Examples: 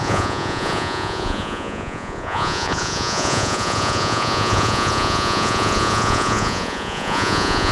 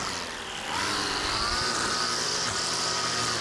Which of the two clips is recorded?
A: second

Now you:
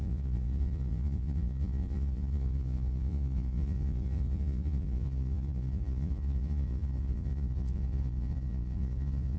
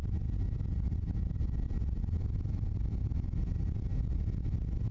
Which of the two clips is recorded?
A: second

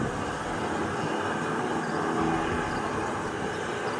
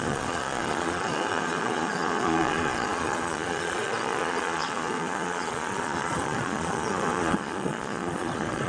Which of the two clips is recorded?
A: first